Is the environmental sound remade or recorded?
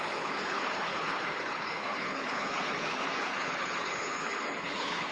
remade